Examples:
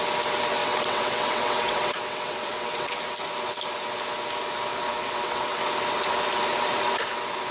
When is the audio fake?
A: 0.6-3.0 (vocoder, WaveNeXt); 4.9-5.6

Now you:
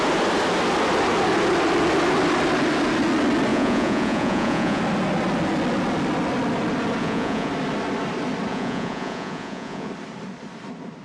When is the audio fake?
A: 3.5-4.8 (vocoder, Vocos); 7.0-7.5; 8.5-9.9

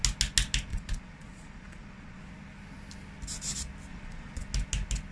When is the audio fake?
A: 0.7-2.2 (vocoder, Vocos); 3.9-4.4

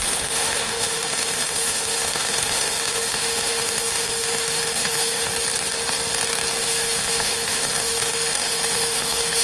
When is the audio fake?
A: 0.0-5.3 (autoencoder, DAC-VAE); 6.6-9.4